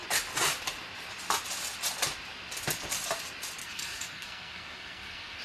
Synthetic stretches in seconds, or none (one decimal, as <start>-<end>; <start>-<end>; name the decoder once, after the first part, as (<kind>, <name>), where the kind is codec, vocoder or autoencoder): 3.6-5.4 (codec, SNAC)

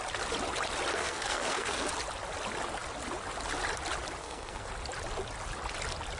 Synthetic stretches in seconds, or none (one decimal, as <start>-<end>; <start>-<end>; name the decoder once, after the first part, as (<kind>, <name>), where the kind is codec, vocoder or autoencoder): 0.9-1.9 (codec, SNAC); 4.2-4.7

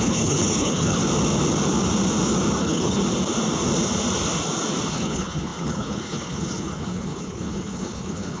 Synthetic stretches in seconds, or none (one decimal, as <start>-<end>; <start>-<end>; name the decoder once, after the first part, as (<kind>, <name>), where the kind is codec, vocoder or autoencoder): 0.0-1.0 (codec, HILCodec); 2.6-3.0; 4.9-8.4

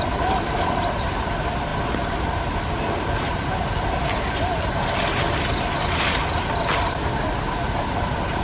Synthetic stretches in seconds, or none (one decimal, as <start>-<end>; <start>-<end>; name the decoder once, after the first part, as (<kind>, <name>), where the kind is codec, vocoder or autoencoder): none

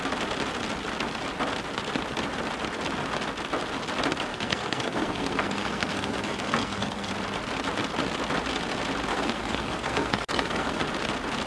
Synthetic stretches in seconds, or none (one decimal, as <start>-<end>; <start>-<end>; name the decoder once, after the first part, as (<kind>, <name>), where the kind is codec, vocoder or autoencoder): 4.3-7.1 (codec, SNAC); 9.1-10.8

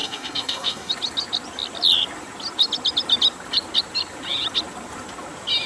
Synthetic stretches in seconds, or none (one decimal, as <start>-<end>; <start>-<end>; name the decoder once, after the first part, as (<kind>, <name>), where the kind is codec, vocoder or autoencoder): 0.0-0.9 (codec, SNAC)

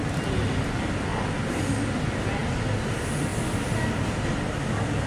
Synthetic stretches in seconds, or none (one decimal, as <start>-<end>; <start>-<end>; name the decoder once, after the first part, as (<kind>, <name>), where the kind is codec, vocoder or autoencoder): none